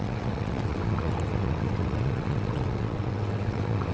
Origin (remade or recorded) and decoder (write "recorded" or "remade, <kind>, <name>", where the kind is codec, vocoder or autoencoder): remade, vocoder, WaveNeXt